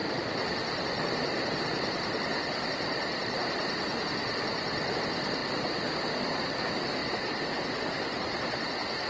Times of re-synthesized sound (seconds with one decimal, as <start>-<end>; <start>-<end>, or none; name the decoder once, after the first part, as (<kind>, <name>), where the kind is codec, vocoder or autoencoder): 0.0-4.9 (vocoder, BigVGAN v2); 5.4-6.1